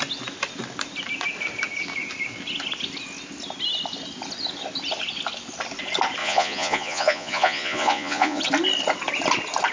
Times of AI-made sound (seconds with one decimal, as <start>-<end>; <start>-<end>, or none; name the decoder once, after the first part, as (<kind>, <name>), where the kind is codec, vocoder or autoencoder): 6.2-8.4 (vocoder, Vocos)